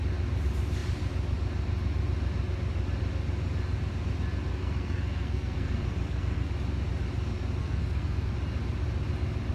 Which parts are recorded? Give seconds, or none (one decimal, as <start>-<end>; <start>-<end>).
0.0-4.5; 6.5-7.6; 8.3-9.5